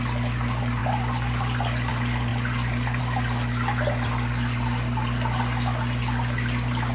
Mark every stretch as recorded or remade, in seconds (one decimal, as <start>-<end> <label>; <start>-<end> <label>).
0.0-6.9 recorded